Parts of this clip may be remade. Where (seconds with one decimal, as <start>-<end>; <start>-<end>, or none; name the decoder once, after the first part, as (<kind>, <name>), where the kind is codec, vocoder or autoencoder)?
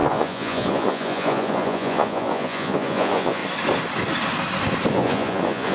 0.0-3.4 (vocoder, Vocos); 4.9-5.7